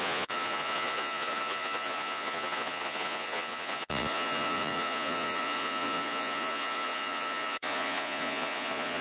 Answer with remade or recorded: remade